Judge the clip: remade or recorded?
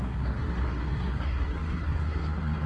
remade